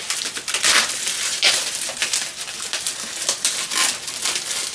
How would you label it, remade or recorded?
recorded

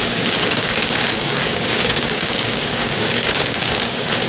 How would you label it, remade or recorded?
remade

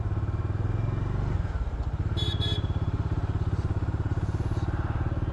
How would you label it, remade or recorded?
recorded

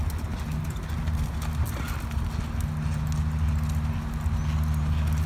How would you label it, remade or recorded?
recorded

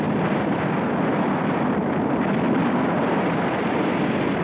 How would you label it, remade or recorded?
recorded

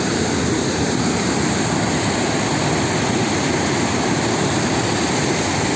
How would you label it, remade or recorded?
recorded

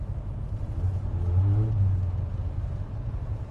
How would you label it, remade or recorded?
recorded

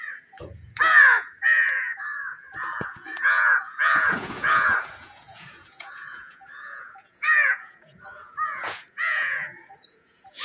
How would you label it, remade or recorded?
remade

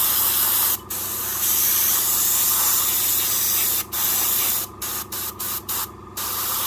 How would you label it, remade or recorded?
recorded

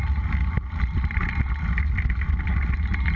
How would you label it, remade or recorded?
recorded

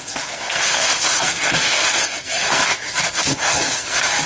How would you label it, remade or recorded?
remade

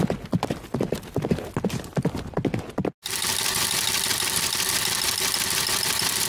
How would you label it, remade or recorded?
recorded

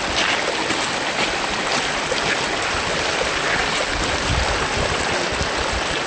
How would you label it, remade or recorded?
recorded